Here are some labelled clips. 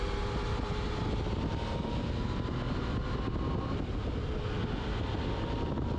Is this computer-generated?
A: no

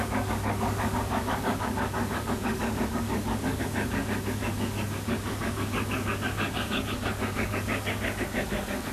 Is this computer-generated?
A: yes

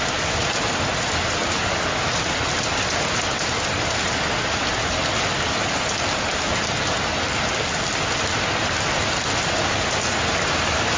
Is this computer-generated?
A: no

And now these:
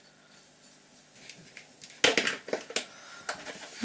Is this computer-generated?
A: no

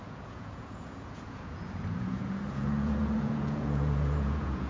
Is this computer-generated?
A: yes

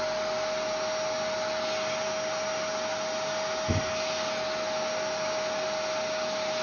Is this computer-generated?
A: no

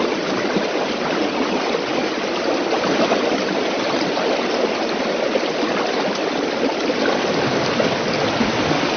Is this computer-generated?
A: no